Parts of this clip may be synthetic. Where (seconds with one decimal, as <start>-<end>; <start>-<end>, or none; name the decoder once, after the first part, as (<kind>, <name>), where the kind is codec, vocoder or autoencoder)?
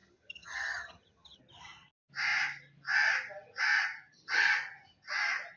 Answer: 0.0-1.4 (vocoder, HiFi-GAN)